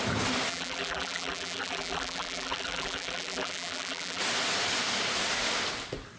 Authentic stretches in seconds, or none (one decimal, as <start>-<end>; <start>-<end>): 0.0-0.5; 4.2-6.2